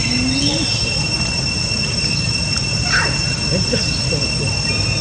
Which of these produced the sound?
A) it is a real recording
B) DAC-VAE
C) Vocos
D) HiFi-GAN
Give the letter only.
A